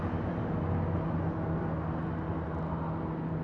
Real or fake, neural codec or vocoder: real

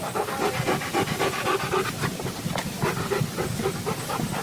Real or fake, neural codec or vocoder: real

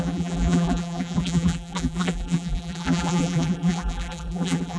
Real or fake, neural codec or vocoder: fake, vocoder, BigVGAN v2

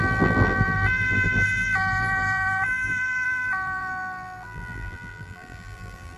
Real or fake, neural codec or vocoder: fake, vocoder, BigVGAN v2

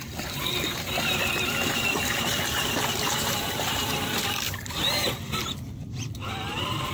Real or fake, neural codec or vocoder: fake, vocoder, BigVGAN v2